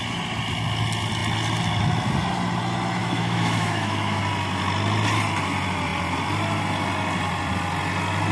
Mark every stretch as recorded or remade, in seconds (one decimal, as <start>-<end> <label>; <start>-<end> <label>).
0.0-3.0 recorded; 3.0-4.2 remade; 4.2-8.3 recorded